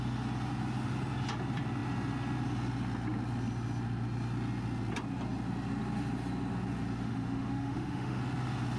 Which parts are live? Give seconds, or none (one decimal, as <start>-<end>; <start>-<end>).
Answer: 0.0-7.0; 8.2-8.8